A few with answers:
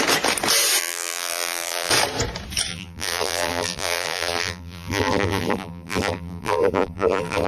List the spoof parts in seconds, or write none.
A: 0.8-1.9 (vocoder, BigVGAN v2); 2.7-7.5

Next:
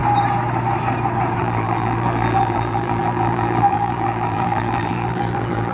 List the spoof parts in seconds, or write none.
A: 1.4-5.7 (vocoder, BigVGAN v2)

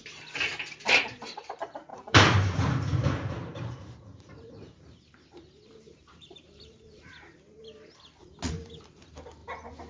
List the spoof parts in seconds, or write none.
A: 1.9-7.1 (vocoder, BigVGAN v2)